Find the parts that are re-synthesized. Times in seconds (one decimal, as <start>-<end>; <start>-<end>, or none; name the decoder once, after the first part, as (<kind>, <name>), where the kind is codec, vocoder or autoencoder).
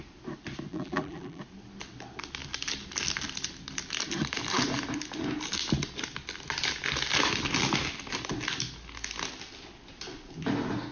0.7-1.4 (vocoder, BigVGAN v2)